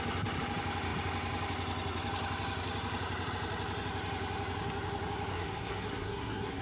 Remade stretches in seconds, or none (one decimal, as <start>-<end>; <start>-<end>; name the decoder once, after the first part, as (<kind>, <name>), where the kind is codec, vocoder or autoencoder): 5.3-6.6 (codec, SNAC)